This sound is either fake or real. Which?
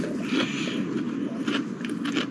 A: fake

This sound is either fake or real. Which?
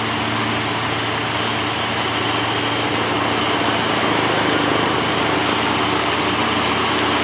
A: real